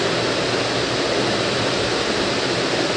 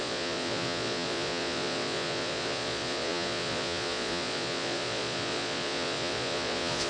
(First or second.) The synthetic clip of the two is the second